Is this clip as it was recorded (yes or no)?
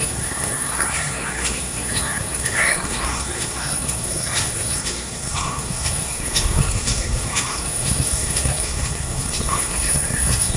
no